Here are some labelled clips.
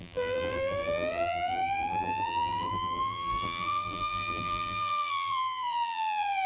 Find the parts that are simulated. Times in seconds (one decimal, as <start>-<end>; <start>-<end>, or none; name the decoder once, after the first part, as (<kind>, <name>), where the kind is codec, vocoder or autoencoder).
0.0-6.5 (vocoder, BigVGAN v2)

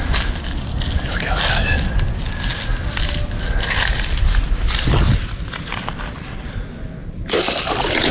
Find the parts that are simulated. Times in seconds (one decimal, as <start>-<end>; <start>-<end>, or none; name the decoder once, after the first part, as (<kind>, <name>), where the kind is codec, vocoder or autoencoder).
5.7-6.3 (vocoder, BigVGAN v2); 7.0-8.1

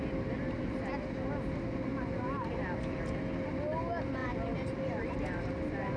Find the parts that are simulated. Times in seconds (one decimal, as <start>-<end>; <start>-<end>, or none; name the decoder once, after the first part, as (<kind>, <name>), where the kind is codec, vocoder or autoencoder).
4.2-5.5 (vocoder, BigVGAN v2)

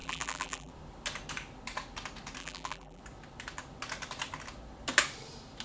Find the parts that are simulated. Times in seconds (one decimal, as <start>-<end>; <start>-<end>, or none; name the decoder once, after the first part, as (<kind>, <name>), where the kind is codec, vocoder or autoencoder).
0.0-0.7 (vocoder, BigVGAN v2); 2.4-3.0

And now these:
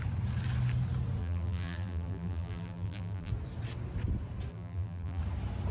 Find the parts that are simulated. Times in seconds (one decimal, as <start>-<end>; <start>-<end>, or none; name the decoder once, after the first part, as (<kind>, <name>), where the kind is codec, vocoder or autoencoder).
1.2-3.3 (vocoder, BigVGAN v2); 4.5-5.2

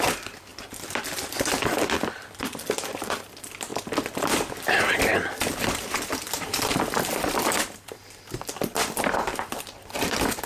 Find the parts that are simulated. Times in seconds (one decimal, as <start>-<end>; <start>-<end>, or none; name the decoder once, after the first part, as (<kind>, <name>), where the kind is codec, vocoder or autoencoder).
0.0-10.5 (vocoder, BigVGAN v2)

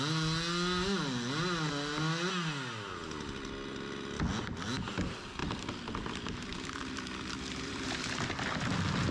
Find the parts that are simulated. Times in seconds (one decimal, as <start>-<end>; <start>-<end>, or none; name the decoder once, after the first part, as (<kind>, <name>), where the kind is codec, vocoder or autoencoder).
5.4-6.1 (vocoder, BigVGAN v2); 6.5-8.7